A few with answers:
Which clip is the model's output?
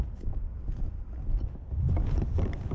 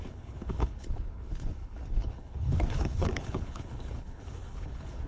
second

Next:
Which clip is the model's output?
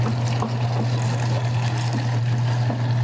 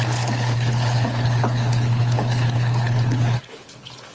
second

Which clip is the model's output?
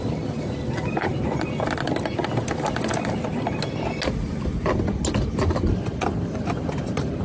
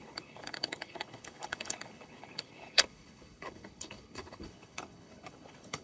second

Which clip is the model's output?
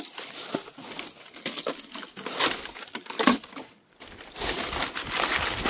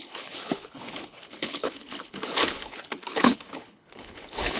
second